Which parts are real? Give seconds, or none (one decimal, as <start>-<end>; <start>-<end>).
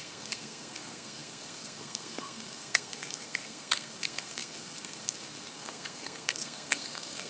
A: none